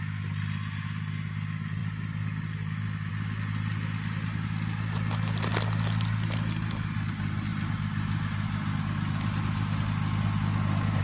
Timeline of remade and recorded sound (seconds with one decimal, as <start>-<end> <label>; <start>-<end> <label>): 0.0-11.0 recorded